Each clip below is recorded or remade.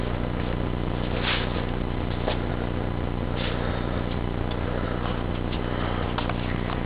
recorded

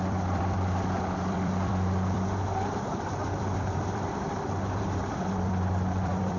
remade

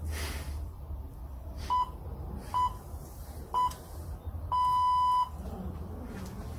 recorded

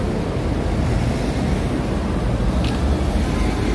recorded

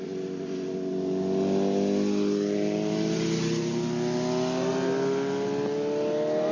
recorded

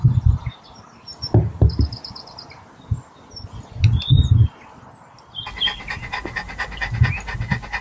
recorded